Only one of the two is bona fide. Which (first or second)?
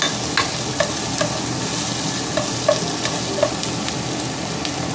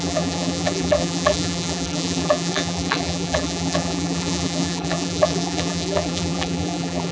first